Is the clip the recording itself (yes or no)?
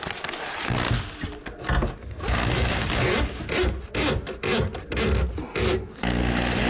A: yes